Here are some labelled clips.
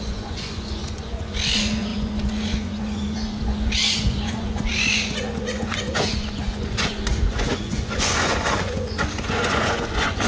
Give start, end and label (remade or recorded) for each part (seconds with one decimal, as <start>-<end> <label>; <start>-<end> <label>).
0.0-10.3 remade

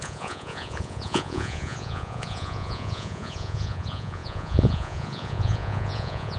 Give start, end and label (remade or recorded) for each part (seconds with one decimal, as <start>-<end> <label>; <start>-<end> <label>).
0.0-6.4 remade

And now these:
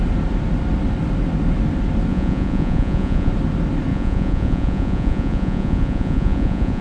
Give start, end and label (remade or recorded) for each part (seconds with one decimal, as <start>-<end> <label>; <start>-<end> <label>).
0.0-2.1 recorded; 2.1-3.3 remade; 3.3-3.9 recorded; 3.9-6.8 remade

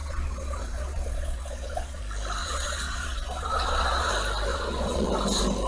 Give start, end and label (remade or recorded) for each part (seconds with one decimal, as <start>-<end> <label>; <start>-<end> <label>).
0.0-2.0 remade; 2.0-2.4 recorded; 2.4-4.1 remade; 4.1-4.5 recorded; 4.5-5.1 remade; 5.1-5.7 recorded

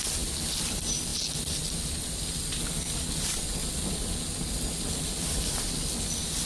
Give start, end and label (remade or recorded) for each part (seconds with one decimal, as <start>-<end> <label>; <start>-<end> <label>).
0.0-6.5 recorded

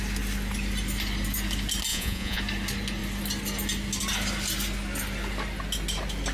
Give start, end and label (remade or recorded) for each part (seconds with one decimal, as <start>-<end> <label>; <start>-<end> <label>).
0.0-1.9 recorded; 1.9-2.4 remade; 2.4-6.3 recorded

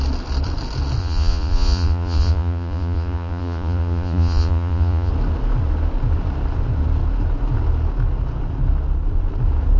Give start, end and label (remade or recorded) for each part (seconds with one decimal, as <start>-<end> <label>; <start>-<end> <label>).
0.0-1.0 recorded; 1.0-5.1 remade; 5.1-9.8 recorded

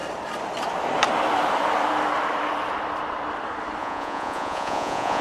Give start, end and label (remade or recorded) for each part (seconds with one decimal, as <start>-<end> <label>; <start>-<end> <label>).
0.0-3.8 recorded; 3.8-5.2 remade